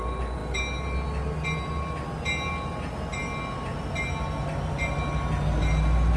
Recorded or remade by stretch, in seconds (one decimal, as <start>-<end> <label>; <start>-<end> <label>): 0.0-6.2 recorded